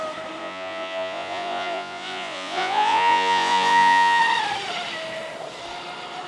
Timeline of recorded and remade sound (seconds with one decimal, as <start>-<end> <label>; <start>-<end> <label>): 0.0-0.4 recorded; 0.4-4.2 remade; 4.2-6.3 recorded